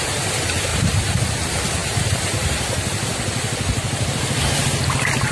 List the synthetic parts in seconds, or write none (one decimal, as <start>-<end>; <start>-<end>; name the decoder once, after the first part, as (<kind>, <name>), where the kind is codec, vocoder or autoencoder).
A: 0.7-1.3 (vocoder, BigVGAN v2); 1.8-2.9